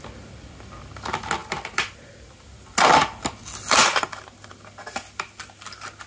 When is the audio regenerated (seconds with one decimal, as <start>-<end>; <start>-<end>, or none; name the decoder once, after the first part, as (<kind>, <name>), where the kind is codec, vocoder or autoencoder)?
none